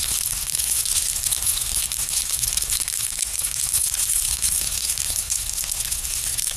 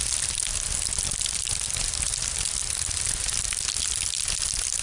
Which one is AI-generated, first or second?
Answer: first